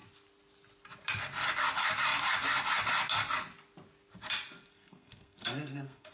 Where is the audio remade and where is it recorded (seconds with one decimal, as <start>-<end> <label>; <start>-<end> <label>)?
0.0-4.7 recorded; 4.7-6.1 remade